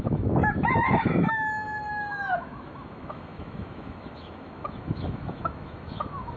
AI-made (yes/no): yes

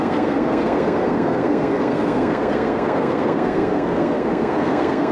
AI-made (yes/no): yes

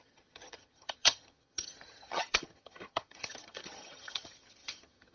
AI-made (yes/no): yes